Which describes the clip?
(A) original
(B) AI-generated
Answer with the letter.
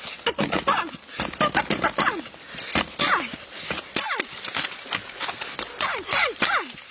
A